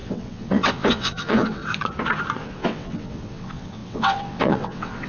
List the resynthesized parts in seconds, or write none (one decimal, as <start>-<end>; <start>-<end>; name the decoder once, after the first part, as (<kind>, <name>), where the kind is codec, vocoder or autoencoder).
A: 0.0-1.6 (vocoder, WaveNeXt); 2.4-5.1